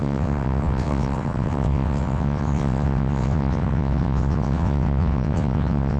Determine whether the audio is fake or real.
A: fake